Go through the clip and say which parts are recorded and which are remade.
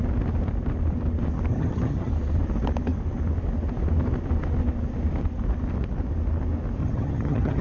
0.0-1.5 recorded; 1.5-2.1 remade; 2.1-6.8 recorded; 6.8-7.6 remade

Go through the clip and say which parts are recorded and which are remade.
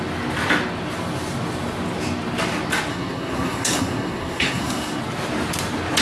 0.0-2.9 recorded; 2.9-5.0 remade; 5.0-6.0 recorded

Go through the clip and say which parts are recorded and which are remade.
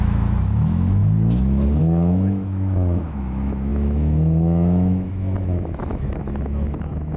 0.0-1.0 remade; 1.0-1.8 recorded; 1.8-7.2 remade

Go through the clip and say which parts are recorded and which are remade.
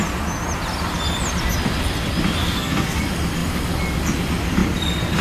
0.0-2.4 recorded; 2.4-3.0 remade; 3.0-5.2 recorded